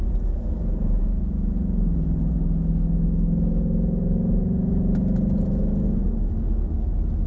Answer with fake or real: real